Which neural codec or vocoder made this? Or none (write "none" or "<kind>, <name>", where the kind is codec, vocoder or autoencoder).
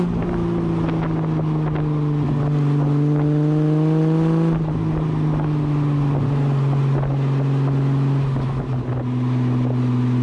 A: none